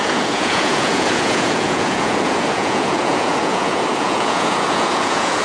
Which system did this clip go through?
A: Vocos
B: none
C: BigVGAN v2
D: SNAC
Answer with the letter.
A